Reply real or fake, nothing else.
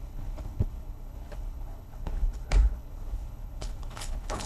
fake